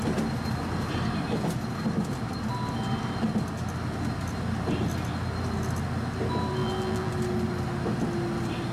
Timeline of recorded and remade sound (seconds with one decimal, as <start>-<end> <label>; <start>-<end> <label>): 0.0-6.6 recorded; 6.6-7.1 remade; 7.1-8.7 recorded